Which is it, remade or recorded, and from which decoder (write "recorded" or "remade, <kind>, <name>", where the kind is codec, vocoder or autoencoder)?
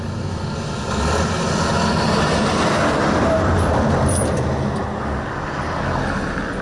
recorded